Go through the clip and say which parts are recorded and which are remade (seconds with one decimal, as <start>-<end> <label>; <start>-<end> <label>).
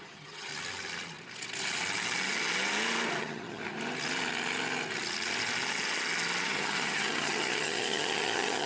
0.0-0.5 remade; 0.5-3.2 recorded; 3.2-3.6 remade; 3.6-6.4 recorded; 6.4-8.7 remade